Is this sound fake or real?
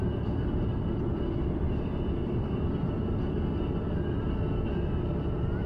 fake